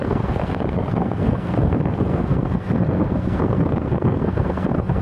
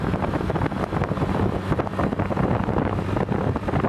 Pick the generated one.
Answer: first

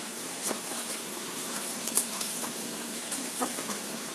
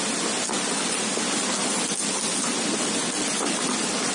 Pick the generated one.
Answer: first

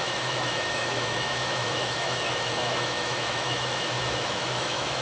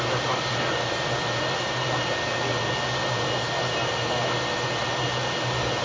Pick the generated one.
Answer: first